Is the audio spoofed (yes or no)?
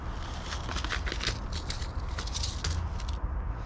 no